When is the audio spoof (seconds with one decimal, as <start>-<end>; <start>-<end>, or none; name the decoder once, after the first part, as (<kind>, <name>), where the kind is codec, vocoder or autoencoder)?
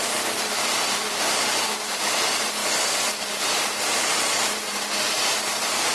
0.0-2.6 (vocoder, BigVGAN v2); 3.2-5.9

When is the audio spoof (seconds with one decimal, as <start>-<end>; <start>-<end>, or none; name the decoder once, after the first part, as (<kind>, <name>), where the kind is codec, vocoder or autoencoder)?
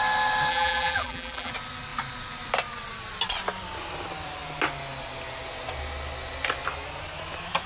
0.5-1.5 (vocoder, BigVGAN v2)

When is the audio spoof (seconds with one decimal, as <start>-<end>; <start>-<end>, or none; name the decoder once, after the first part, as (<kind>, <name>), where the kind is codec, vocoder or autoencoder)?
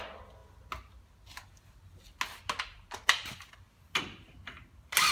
none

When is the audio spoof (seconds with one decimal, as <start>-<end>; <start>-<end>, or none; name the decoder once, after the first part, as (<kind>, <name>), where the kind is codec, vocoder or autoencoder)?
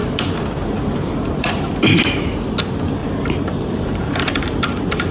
3.0-5.1 (vocoder, BigVGAN v2)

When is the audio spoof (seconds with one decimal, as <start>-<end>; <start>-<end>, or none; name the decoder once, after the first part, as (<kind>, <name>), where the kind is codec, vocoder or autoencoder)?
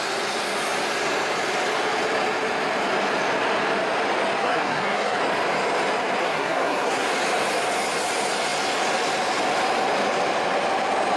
4.4-5.2 (codec, SNAC); 6.2-7.1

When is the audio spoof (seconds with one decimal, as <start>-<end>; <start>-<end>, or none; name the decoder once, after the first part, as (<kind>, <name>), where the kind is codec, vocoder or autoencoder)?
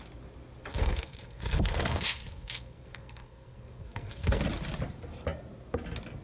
0.7-4.4 (codec, SNAC)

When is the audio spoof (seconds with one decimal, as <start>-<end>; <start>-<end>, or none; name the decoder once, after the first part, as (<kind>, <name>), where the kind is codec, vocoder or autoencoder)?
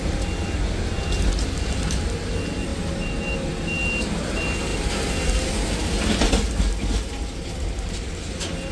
none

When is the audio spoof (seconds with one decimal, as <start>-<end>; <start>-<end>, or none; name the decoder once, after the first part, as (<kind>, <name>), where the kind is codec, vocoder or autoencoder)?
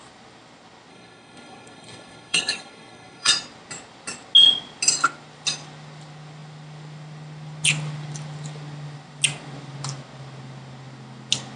0.9-3.3 (codec, SNAC)